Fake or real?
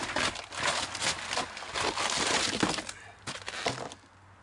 real